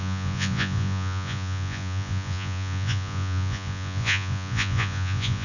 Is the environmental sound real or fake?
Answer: fake